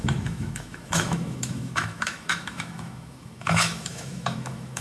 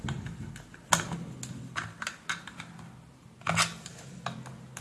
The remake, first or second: first